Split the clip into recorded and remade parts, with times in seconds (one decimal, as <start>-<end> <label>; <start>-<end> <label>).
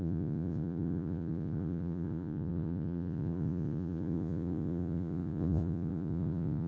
0.0-6.7 remade